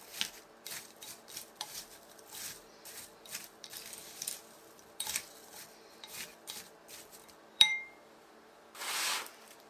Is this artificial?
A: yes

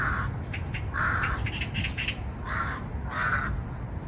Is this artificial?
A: no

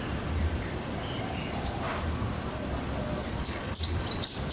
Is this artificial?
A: yes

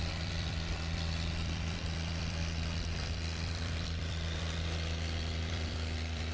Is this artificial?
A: yes